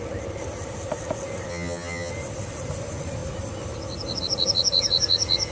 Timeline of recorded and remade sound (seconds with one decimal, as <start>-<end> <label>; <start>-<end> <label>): 0.0-1.5 recorded; 1.5-2.1 remade; 2.1-5.5 recorded